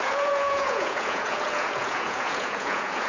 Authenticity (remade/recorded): remade